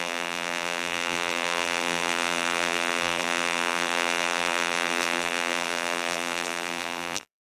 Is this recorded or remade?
remade